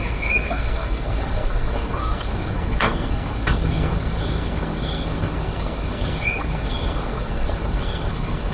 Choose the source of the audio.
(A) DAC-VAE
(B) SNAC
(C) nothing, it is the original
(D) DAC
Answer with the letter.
B